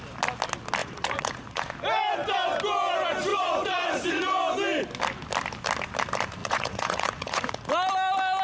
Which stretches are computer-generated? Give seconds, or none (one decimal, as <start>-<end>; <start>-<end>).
0.8-1.7; 3.3-4.4; 6.4-7.7